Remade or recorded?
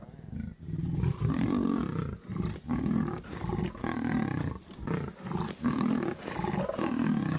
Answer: recorded